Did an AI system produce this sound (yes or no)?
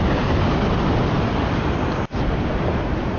no